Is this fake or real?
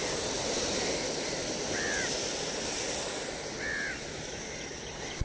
fake